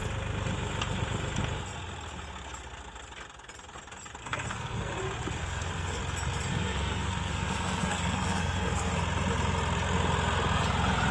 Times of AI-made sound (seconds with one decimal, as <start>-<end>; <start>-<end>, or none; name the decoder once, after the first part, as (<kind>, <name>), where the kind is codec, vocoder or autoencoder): 4.2-5.0 (codec, SNAC); 5.4-6.0; 6.5-8.9